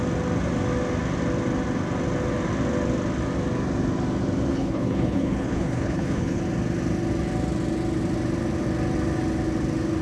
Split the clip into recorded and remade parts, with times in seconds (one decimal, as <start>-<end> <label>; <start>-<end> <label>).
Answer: 0.0-4.5 recorded; 4.5-6.4 remade; 6.4-10.0 recorded